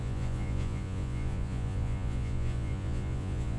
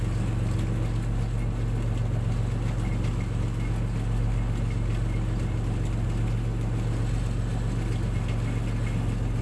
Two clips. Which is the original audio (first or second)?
second